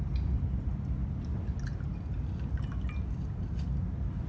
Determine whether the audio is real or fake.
real